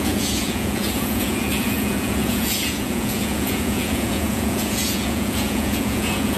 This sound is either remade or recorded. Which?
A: remade